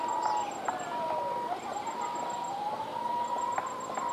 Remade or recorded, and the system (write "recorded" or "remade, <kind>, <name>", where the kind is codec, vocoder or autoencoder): recorded